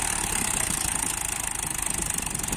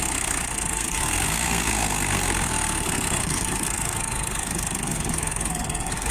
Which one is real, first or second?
first